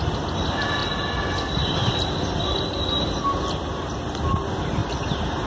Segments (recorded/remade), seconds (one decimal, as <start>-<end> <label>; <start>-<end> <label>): 0.0-5.5 recorded